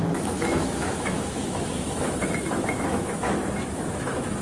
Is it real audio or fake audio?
fake